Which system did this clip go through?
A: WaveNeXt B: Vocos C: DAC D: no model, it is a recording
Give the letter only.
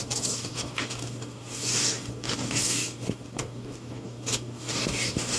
C